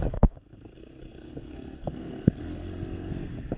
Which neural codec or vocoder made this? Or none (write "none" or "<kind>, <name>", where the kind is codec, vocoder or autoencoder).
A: codec, SNAC